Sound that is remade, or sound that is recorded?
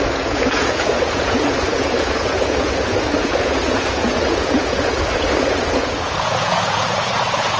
remade